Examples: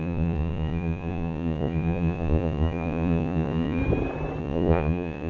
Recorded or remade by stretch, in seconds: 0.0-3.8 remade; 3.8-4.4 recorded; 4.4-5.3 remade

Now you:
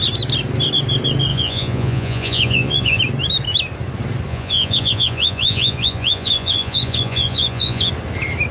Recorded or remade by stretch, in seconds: 0.0-1.3 recorded; 1.3-3.0 remade; 3.0-4.3 recorded; 4.3-7.9 remade; 7.9-8.5 recorded

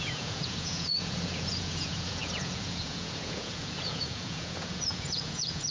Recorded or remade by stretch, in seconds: 0.0-5.7 remade

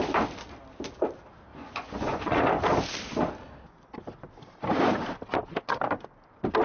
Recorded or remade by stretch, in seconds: 0.0-1.5 recorded; 1.5-2.4 remade; 2.4-6.6 recorded